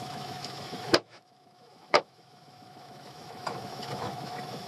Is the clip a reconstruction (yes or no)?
yes